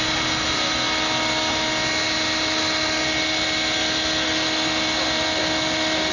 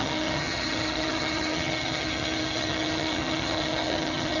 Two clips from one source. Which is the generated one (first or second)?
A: second